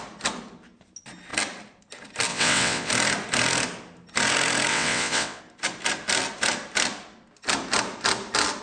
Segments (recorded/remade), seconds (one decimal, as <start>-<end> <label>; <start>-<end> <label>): 0.0-2.3 recorded; 2.3-2.9 remade; 2.9-4.7 recorded; 4.7-5.4 remade; 5.4-8.6 recorded